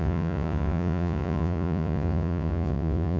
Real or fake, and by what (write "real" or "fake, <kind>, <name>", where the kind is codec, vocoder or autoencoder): fake, vocoder, Vocos